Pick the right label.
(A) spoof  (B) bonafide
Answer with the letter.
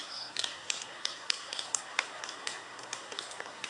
A